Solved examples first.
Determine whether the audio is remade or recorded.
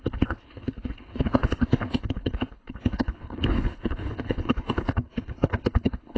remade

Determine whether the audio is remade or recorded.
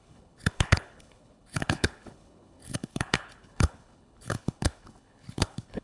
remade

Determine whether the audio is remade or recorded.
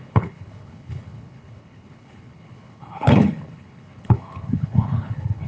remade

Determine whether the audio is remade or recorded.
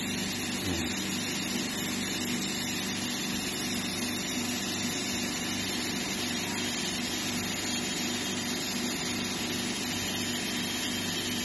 recorded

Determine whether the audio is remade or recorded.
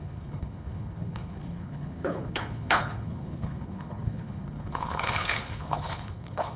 remade